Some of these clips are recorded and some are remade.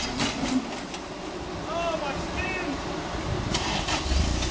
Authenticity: recorded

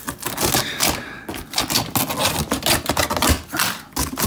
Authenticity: recorded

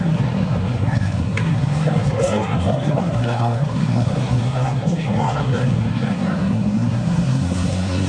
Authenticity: remade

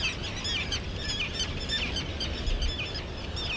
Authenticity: recorded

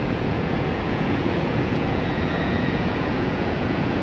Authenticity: remade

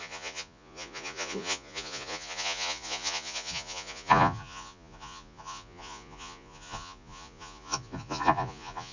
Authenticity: remade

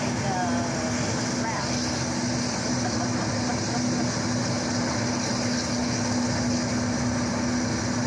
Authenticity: recorded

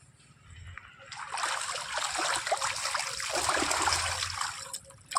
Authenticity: recorded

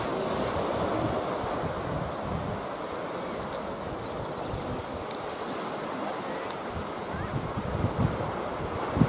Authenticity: recorded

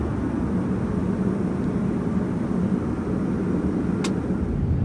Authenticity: recorded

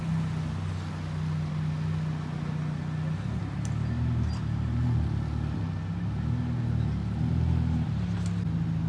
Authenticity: recorded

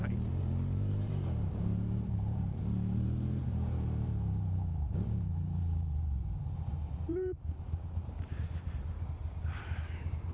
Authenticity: remade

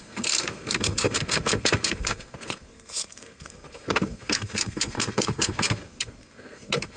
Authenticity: remade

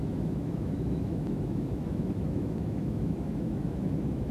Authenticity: remade